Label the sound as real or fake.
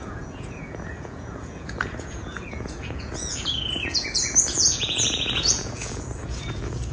fake